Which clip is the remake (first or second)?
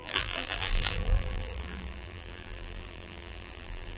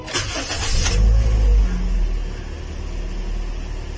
first